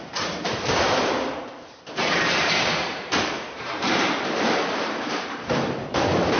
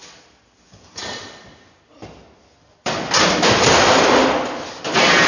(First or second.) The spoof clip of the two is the first